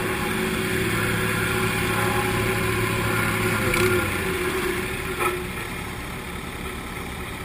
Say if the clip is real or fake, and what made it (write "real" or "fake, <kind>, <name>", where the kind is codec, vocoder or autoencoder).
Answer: real